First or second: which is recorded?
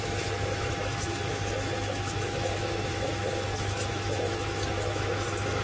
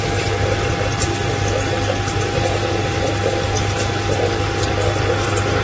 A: second